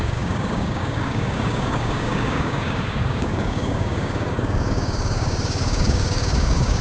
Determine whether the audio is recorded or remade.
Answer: remade